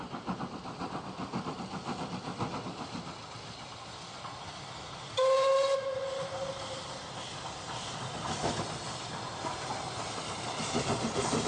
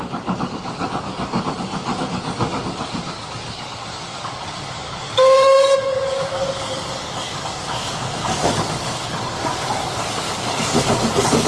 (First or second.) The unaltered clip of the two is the first